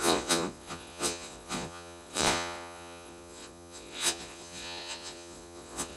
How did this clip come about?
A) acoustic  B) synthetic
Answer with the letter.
B